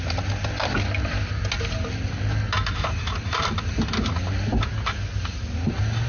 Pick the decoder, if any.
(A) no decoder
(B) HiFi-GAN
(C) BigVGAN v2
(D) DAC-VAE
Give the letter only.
A